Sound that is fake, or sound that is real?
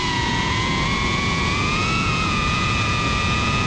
fake